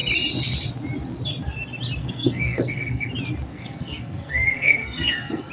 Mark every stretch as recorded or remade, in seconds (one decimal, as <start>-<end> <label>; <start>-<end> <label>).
0.0-2.0 recorded; 2.0-3.1 remade; 3.1-3.5 recorded; 3.5-5.5 remade